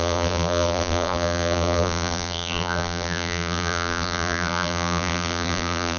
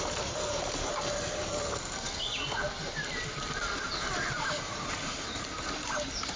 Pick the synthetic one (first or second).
first